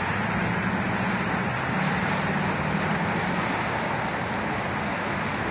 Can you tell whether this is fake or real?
real